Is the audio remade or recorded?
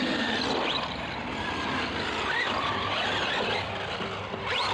recorded